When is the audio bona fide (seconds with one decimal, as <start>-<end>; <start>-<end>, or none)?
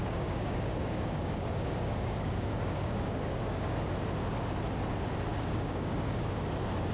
3.9-5.3; 6.5-6.9